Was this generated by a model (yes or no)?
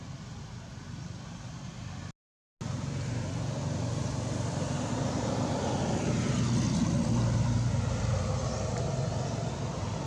no